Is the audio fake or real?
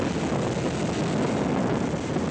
real